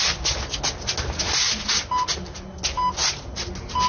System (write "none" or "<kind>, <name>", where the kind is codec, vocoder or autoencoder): none